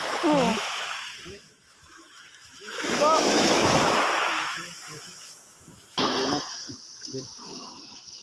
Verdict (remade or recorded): remade